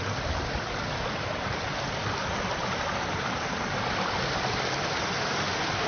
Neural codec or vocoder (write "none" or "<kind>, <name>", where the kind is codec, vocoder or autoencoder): none